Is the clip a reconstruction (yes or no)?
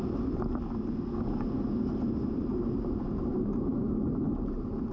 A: no